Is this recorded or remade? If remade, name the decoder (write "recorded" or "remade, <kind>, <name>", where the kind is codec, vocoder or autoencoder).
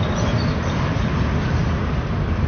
recorded